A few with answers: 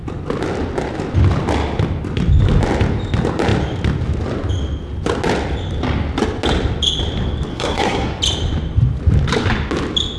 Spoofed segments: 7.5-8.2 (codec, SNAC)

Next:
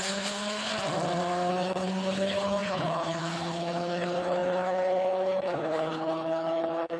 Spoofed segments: 0.0-0.7 (codec, HILCodec); 1.5-7.0

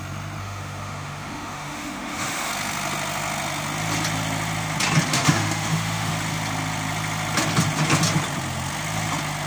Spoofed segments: 0.4-2.5 (autoencoder, DAC-VAE); 5.1-6.1

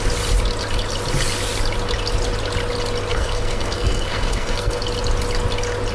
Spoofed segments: 3.1-4.8 (codec, SNAC)

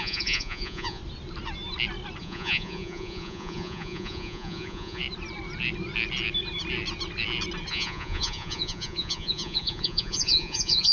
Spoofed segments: 0.0-1.0 (vocoder, Vocos); 2.2-5.0; 7.7-10.9

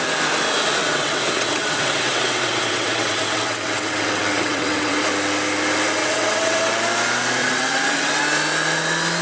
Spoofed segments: 0.8-5.0 (vocoder, WaveNeXt); 6.0-6.7; 7.4-8.2

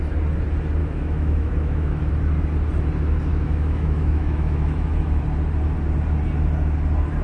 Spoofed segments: 0.8-2.1 (autoencoder, DAC-VAE); 3.3-5.2